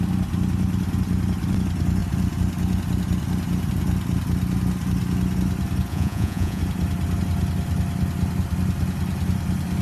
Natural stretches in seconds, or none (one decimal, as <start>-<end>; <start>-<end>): 0.0-5.9; 6.6-9.8